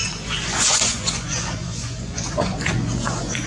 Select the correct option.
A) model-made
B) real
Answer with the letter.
A